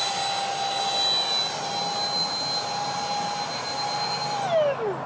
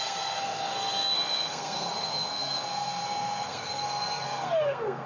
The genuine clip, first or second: first